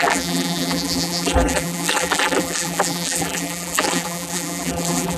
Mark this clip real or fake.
fake